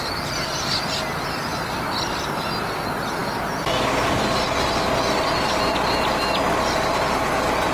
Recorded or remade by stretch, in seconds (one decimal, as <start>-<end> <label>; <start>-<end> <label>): 0.0-7.7 recorded